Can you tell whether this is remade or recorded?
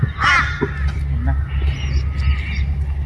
recorded